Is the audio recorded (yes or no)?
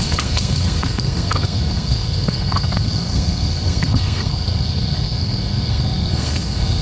no